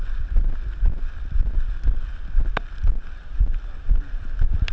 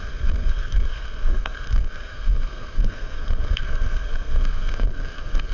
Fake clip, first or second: second